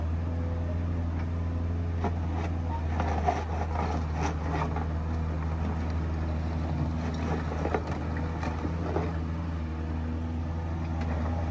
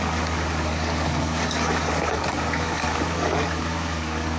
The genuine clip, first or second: first